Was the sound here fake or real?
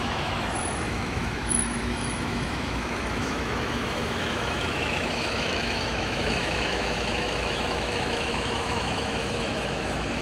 fake